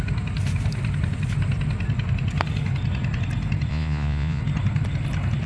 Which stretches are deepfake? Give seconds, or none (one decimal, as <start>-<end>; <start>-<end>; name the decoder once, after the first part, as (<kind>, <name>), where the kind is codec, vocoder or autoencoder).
3.7-4.4 (vocoder, Vocos)